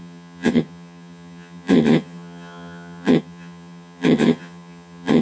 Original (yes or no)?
no